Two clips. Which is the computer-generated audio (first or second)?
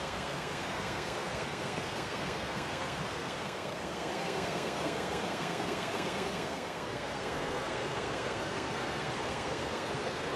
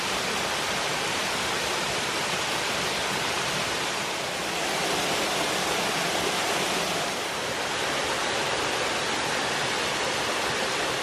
first